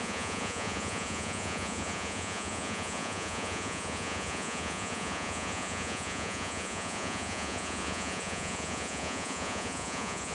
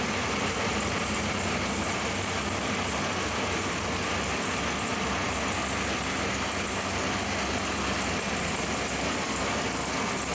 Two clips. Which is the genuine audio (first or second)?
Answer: second